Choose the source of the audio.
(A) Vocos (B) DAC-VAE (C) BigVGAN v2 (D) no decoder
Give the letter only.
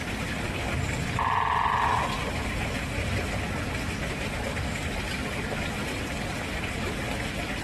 D